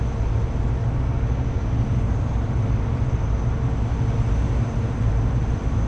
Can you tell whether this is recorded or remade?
recorded